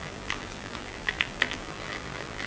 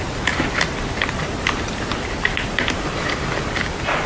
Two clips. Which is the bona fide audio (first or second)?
second